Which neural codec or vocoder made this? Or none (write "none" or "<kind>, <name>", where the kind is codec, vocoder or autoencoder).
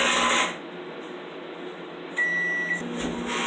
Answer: none